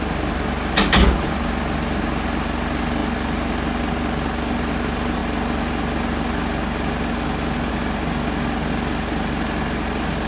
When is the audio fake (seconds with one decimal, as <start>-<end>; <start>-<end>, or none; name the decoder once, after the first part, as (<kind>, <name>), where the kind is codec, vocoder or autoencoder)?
none